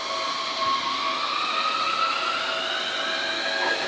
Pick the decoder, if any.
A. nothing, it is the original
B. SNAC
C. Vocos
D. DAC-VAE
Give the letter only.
A